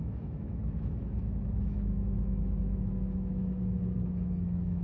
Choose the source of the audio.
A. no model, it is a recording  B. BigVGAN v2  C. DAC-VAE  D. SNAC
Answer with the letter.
C